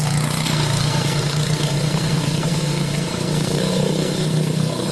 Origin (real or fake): fake